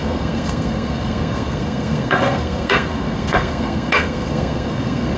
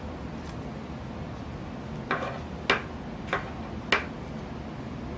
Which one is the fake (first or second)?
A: first